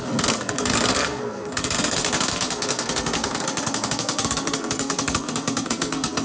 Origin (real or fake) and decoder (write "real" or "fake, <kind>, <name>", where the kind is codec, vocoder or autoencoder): fake, codec, SNAC